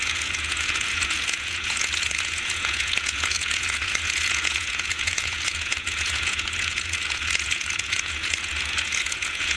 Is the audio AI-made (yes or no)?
yes